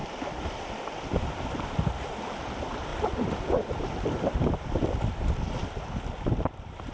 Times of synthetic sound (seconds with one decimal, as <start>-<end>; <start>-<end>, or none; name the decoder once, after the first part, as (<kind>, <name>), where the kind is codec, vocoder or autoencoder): 1.1-6.9 (vocoder, BigVGAN v2)